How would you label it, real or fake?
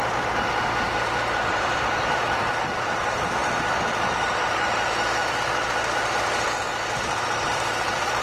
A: fake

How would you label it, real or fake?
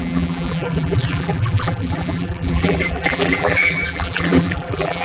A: fake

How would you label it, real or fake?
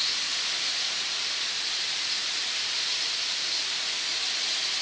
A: real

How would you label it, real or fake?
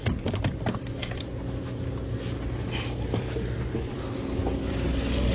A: real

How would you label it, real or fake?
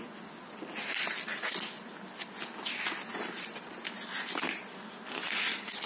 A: real